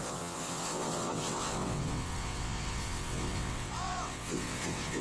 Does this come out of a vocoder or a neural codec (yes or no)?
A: yes